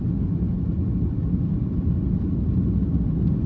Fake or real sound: real